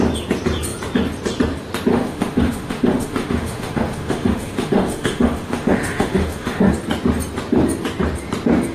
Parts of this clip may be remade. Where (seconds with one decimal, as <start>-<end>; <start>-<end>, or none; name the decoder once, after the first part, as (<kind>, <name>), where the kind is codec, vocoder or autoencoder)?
1.9-6.7 (autoencoder, DAC-VAE)

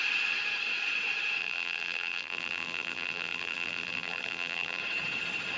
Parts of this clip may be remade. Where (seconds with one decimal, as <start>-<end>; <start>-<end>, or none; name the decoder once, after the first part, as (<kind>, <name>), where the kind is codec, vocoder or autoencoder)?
1.4-4.8 (vocoder, BigVGAN v2)

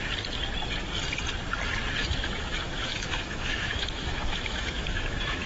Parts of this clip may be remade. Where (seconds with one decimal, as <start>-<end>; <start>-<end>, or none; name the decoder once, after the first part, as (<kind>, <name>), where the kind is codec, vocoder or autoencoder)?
2.0-5.5 (autoencoder, DAC-VAE)

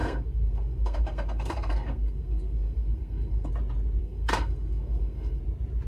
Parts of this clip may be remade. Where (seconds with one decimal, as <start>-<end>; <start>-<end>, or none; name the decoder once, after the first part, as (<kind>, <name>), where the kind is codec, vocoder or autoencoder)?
0.0-3.5 (codec, SNAC); 4.0-5.4

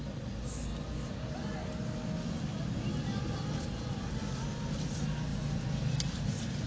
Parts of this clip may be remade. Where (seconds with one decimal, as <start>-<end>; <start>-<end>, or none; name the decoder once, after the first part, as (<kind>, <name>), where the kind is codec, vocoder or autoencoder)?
none

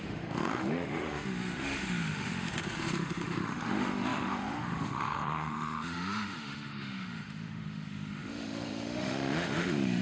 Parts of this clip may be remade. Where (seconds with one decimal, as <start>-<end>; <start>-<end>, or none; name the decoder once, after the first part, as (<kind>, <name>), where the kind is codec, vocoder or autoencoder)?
0.0-10.0 (autoencoder, DAC-VAE)

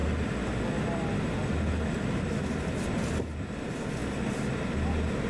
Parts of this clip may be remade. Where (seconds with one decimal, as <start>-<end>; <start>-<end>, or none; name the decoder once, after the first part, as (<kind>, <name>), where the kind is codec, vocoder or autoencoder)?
none

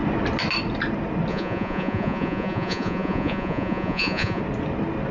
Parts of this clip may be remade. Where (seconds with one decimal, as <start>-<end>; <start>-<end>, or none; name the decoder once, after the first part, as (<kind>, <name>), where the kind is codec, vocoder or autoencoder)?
1.3-4.4 (vocoder, Vocos)